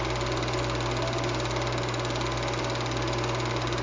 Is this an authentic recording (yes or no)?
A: yes